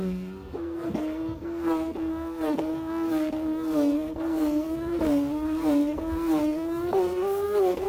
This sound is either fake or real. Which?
fake